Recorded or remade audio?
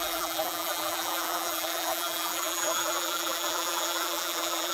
remade